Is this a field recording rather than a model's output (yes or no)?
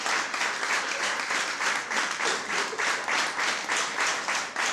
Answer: yes